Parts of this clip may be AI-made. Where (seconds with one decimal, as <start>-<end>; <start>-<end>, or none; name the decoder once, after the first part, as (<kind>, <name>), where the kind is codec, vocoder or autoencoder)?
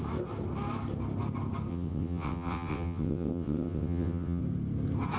1.7-4.4 (vocoder, WaveNeXt)